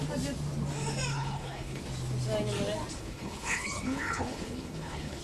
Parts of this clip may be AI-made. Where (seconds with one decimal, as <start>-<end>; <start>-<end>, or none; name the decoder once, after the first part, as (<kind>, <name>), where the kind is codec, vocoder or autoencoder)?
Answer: 1.1-1.8 (codec, HILCodec); 2.9-5.2